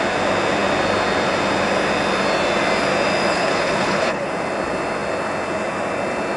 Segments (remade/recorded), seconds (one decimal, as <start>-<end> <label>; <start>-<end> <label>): 0.0-3.3 recorded; 3.3-4.3 remade; 4.3-6.4 recorded